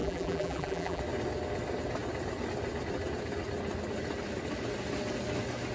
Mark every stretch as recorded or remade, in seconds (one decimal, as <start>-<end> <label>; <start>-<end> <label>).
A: 0.0-1.0 remade; 1.0-5.7 recorded